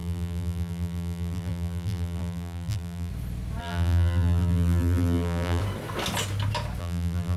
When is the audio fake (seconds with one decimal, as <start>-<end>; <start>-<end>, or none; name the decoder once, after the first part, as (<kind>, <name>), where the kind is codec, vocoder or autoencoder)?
0.0-3.1 (vocoder, BigVGAN v2); 3.6-5.6; 6.8-7.4